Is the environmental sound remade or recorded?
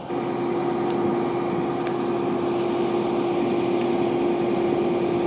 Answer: recorded